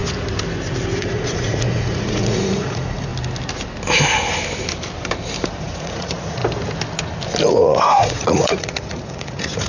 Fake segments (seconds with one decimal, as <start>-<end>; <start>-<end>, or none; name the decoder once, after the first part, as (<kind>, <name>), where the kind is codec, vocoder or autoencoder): 1.0-3.1 (vocoder, Vocos); 5.6-6.4; 7.5-9.7

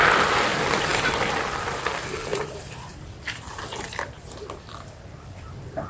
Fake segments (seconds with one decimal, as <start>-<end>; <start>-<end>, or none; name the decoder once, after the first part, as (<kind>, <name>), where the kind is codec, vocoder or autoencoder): 2.3-5.1 (vocoder, BigVGAN v2)

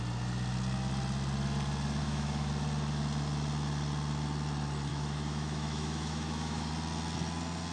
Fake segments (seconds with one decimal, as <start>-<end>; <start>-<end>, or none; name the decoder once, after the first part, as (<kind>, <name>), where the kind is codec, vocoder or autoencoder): 2.0-2.5 (autoencoder, DAC-VAE); 4.9-6.7

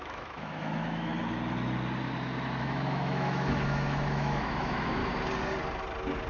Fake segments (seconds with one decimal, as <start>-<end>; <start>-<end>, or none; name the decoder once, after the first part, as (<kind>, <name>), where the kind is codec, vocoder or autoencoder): 0.0-1.1 (autoencoder, DAC-VAE); 2.6-5.0

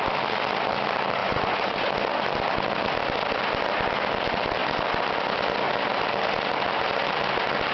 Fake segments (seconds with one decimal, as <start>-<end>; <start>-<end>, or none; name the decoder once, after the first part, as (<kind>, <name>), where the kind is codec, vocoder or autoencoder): 1.2-1.9 (vocoder, Vocos)